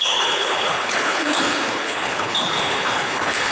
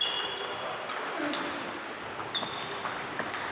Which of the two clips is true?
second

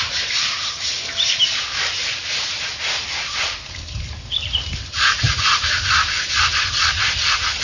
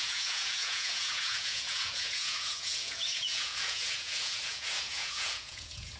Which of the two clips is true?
first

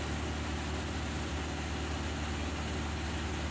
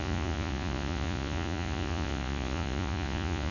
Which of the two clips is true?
first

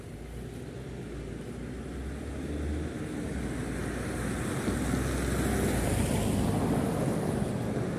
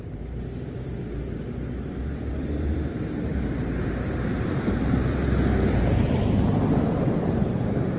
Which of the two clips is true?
first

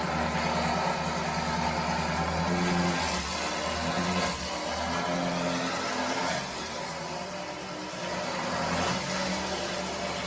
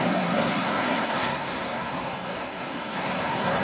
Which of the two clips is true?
first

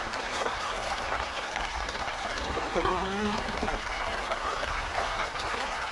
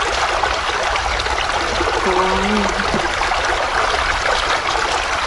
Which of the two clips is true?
second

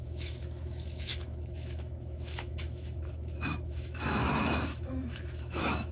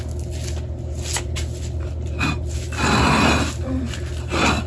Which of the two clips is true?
second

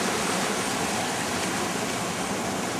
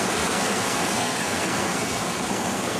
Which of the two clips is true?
first